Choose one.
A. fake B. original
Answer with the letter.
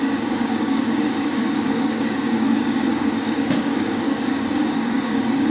A